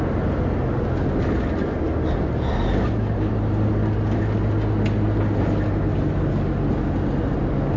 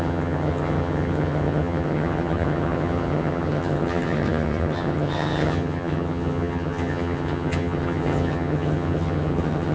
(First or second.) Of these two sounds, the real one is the first